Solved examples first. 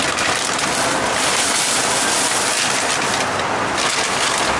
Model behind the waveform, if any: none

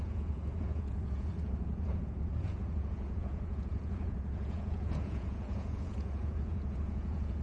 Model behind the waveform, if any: vocoder, Vocos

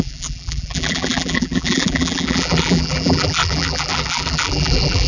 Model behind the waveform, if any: vocoder, BigVGAN v2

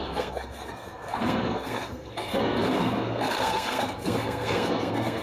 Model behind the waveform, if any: codec, SNAC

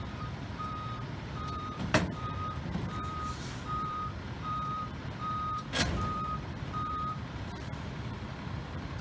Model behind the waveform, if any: vocoder, BigVGAN v2